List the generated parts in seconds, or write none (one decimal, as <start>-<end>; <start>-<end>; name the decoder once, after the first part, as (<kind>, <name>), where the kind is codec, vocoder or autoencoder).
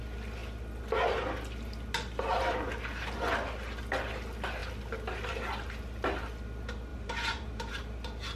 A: 6.9-7.7 (vocoder, BigVGAN v2)